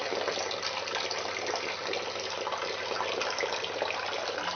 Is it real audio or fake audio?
real